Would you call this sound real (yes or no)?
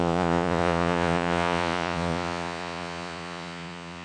no